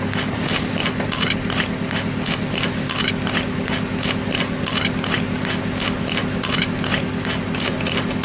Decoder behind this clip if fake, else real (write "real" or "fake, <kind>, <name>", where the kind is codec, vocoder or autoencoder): real